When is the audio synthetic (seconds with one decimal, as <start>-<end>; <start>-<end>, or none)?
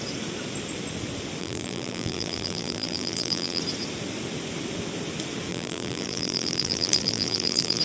1.4-3.6; 5.5-7.8